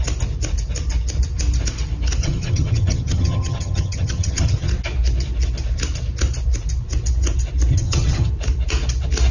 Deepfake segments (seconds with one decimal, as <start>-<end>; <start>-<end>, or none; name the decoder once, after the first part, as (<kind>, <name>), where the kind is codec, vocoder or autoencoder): 2.2-4.7 (vocoder, HiFi-GAN); 7.7-8.3